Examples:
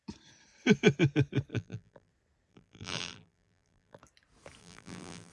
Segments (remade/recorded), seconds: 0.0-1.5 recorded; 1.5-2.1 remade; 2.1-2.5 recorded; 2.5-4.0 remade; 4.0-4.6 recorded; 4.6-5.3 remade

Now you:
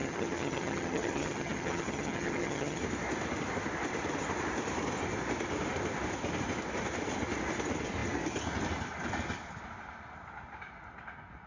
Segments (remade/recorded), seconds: 0.0-2.8 remade; 2.8-11.5 recorded